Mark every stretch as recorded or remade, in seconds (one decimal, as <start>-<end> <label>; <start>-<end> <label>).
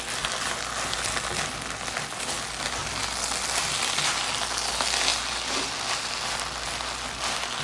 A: 0.0-7.6 recorded